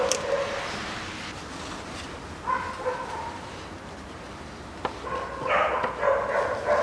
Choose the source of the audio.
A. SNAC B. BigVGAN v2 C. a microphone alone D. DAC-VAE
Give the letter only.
C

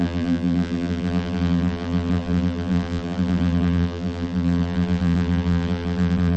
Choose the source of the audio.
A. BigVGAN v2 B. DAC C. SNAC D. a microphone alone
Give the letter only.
A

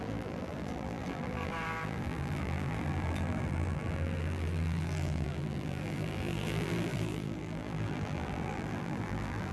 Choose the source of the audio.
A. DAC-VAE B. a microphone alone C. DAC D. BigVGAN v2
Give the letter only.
D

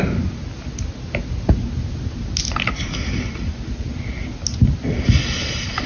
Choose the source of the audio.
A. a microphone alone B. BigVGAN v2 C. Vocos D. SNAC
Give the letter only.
A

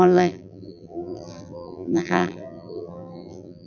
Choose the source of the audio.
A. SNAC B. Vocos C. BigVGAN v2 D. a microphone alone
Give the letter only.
C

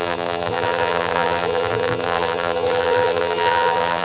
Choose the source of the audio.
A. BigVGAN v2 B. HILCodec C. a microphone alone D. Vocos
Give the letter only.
A